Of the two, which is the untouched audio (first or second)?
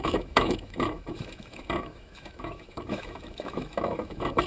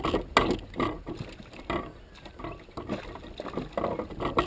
second